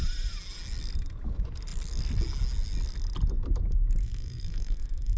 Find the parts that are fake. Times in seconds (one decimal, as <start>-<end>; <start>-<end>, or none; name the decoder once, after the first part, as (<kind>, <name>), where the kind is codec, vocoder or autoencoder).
4.0-5.2 (codec, SNAC)